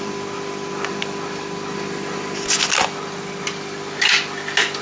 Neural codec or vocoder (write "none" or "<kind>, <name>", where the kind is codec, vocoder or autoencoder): none